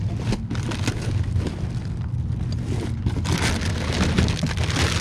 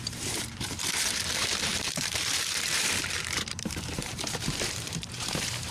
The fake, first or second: second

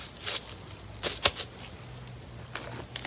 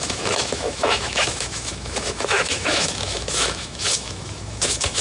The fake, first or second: second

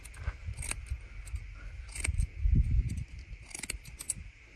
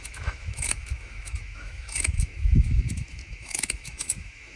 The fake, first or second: second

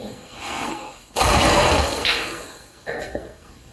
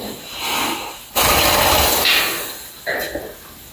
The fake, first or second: first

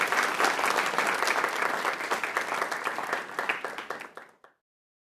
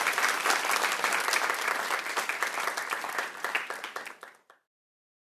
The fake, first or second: second